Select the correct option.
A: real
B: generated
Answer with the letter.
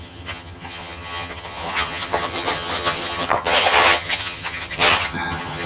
B